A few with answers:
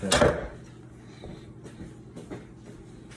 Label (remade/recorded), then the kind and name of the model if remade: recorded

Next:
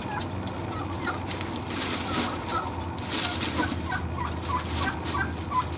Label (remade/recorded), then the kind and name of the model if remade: recorded